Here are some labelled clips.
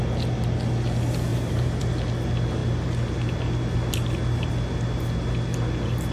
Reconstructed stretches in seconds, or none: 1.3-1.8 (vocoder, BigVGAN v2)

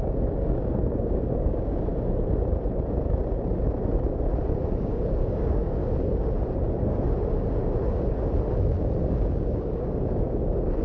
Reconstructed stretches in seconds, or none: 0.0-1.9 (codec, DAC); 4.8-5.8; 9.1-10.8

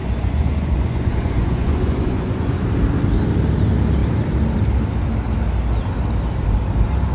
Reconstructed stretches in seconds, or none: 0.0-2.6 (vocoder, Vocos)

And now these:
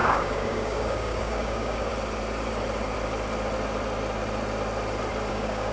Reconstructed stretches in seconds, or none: 0.0-1.9 (codec, DAC); 5.3-5.7